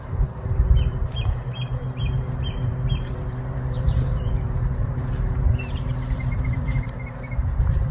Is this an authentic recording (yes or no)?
no